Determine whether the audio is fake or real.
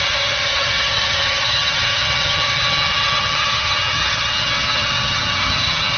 fake